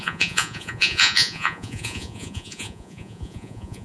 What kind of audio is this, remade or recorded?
remade